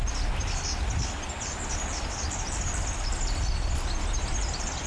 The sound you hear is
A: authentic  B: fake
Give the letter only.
A